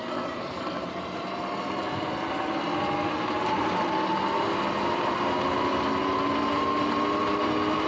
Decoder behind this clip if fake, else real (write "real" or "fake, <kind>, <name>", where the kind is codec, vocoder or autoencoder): real